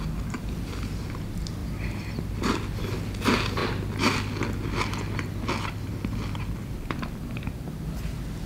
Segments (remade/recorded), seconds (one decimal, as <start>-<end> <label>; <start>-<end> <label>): 0.0-8.5 recorded